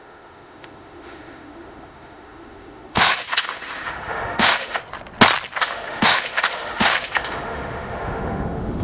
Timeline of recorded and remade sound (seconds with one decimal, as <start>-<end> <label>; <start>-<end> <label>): 0.0-4.8 remade; 4.8-5.6 recorded; 5.6-8.8 remade